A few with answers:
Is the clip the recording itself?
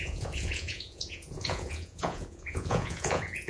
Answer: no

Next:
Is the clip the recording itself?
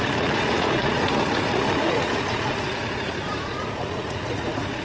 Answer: no